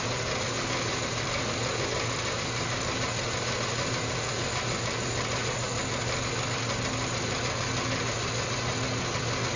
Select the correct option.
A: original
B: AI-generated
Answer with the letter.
A